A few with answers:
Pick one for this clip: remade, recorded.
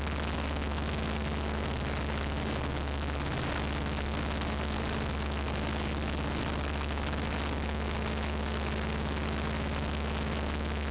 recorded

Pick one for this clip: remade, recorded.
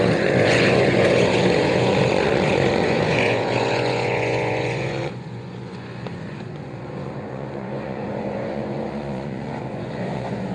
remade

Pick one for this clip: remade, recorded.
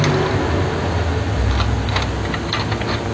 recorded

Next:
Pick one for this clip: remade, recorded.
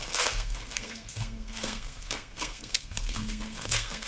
remade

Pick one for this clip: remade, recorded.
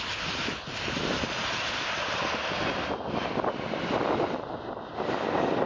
recorded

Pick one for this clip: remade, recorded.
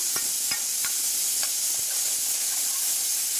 recorded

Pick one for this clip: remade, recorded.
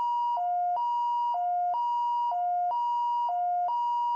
recorded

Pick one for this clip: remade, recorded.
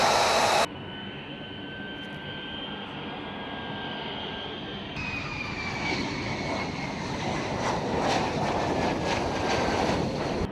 recorded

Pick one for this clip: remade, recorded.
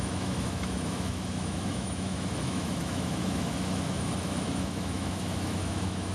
remade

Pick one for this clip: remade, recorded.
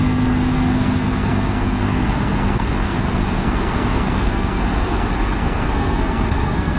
remade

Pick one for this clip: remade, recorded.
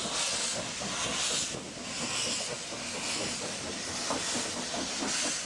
recorded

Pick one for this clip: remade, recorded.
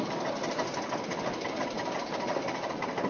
recorded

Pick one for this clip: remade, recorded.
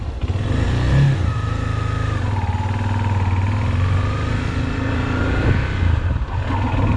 recorded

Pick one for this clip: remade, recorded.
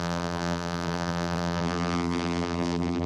remade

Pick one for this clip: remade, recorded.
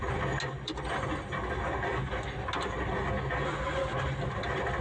recorded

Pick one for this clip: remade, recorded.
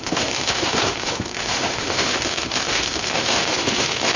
remade